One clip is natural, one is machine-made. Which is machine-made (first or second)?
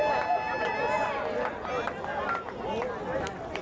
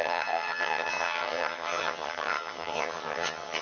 second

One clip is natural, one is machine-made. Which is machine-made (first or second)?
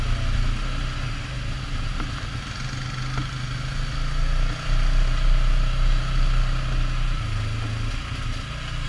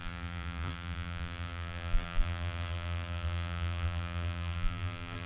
second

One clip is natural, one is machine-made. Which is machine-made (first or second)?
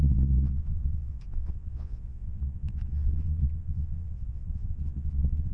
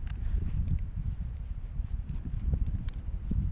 first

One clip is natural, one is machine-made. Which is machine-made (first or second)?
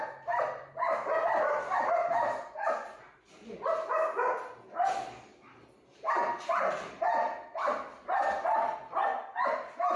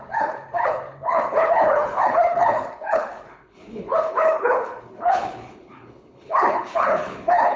second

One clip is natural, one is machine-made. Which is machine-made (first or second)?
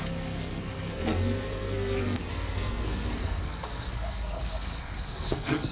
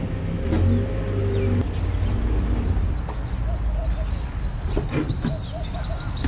first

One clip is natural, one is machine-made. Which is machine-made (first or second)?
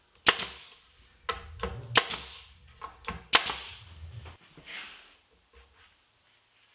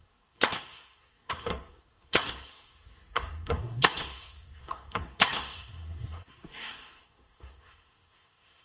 second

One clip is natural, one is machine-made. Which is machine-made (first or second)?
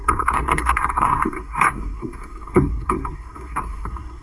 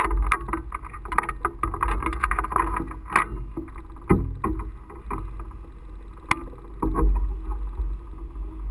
first